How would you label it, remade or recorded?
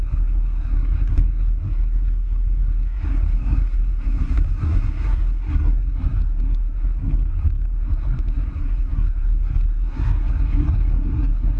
remade